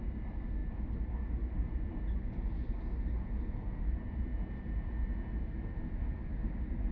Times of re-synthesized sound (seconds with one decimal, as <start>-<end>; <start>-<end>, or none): none